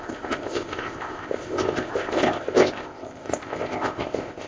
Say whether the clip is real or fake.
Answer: fake